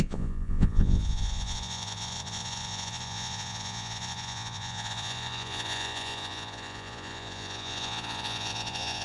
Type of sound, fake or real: fake